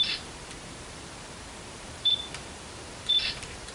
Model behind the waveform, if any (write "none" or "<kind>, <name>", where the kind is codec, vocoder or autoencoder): vocoder, BigVGAN v2